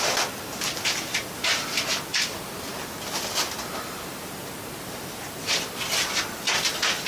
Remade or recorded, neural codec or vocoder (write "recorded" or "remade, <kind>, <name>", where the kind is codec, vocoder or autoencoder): recorded